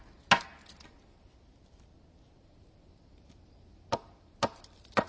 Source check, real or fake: real